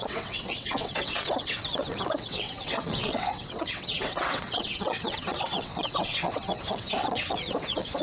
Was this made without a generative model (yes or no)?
no